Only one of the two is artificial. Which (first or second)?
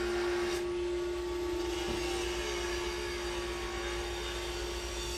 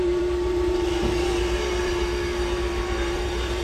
second